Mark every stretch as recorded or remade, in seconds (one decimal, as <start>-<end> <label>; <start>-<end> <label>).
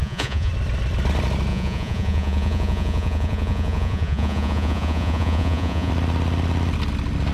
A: 0.0-0.5 remade; 0.5-1.5 recorded; 1.5-5.9 remade; 5.9-7.3 recorded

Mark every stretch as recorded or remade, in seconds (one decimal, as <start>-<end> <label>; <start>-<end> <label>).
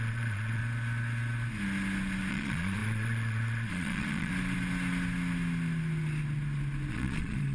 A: 0.0-0.6 remade; 0.6-2.3 recorded; 2.3-4.3 remade; 4.3-6.9 recorded; 6.9-7.5 remade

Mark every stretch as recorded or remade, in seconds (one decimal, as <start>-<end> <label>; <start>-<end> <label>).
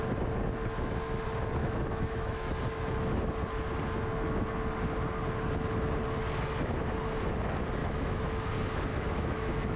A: 0.0-1.6 recorded; 1.6-2.5 remade; 2.5-7.8 recorded; 7.8-8.5 remade; 8.5-8.9 recorded; 8.9-9.8 remade